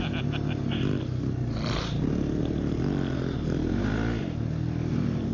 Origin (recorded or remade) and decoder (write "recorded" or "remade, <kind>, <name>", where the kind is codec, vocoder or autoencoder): recorded